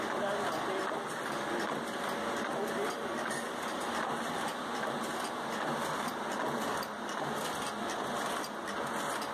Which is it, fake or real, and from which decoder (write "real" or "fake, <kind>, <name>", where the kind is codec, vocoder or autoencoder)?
real